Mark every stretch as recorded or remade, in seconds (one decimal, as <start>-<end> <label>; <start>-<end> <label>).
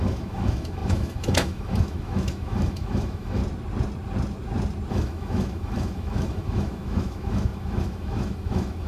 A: 0.0-3.4 remade; 3.4-4.9 recorded; 4.9-8.9 remade